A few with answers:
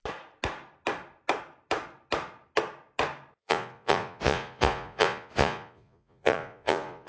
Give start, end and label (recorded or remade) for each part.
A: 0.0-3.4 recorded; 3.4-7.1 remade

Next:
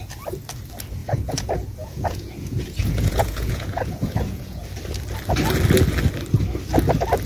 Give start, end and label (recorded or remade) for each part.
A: 0.0-1.0 recorded; 1.0-4.6 remade; 4.6-7.3 recorded

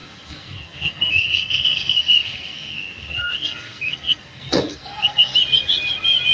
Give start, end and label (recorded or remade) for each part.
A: 0.0-5.3 remade; 5.3-6.3 recorded

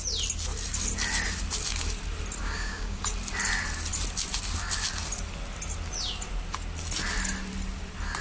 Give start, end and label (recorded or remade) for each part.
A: 0.0-2.4 recorded; 2.4-3.0 remade; 3.0-8.2 recorded

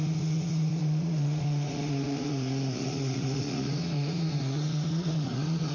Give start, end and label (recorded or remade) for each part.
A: 0.0-5.7 remade

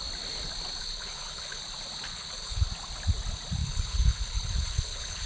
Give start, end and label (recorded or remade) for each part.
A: 0.0-0.8 recorded; 0.8-1.6 remade; 1.6-2.1 recorded; 2.1-2.7 remade; 2.7-3.6 recorded; 3.6-5.3 remade